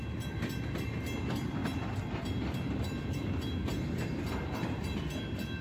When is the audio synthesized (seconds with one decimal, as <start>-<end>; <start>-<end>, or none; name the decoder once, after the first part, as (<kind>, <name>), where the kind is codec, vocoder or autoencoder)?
1.6-5.0 (vocoder, BigVGAN v2)